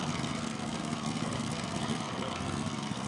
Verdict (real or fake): fake